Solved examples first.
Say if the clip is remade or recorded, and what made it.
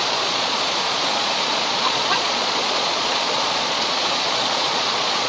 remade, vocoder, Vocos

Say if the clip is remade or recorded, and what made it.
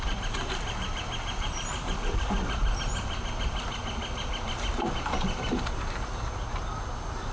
recorded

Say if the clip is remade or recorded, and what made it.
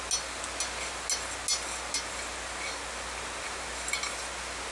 recorded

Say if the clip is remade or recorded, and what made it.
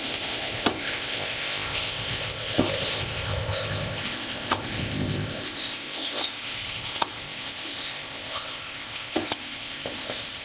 remade, codec, ZipCodec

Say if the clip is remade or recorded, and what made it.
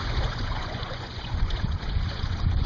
remade, vocoder, Vocos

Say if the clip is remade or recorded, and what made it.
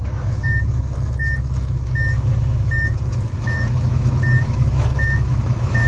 remade, autoencoder, DAC-VAE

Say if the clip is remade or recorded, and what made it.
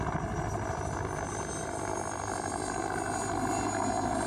recorded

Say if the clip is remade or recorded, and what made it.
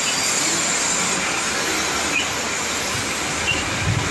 recorded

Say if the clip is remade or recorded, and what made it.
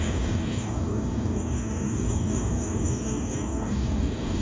remade, codec, DAC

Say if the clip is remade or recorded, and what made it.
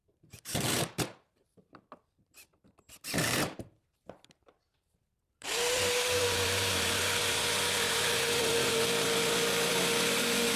remade, vocoder, BigVGAN v2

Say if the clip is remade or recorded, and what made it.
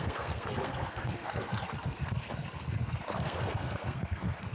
remade, codec, SNAC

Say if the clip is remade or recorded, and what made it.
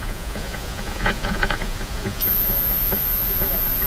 remade, vocoder, Vocos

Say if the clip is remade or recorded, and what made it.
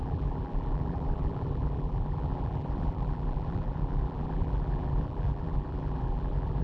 remade, vocoder, BigVGAN v2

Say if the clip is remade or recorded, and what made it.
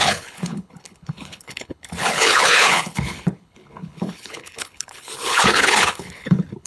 remade, codec, HILCodec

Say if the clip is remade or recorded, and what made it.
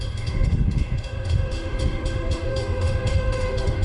remade, autoencoder, DAC-VAE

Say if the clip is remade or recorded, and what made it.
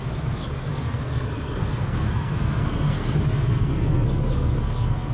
remade, codec, SNAC